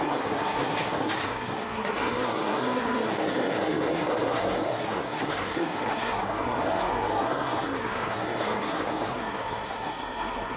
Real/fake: fake